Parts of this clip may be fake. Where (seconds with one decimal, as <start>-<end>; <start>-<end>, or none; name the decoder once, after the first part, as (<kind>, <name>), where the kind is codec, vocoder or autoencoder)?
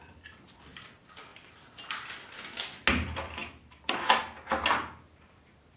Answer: none